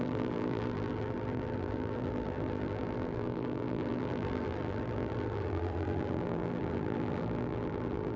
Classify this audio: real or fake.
fake